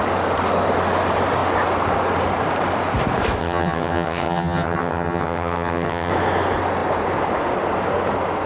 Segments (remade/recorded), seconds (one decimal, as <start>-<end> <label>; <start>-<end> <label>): 0.0-3.4 recorded; 3.4-6.1 remade; 6.1-8.5 recorded